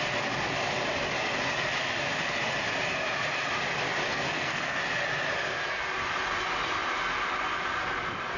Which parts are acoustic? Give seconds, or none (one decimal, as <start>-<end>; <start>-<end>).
0.0-4.1; 4.8-8.4